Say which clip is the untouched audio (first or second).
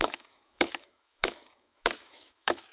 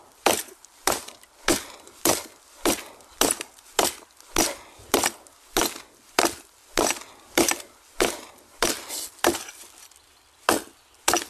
second